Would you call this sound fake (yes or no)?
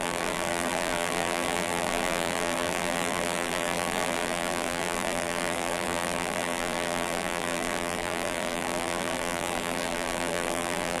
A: yes